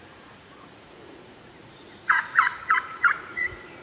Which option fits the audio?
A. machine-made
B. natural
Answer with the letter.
A